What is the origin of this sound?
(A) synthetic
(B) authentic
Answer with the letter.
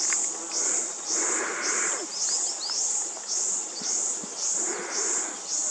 B